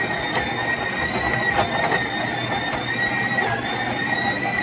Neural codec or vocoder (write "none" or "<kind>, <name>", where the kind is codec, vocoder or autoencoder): none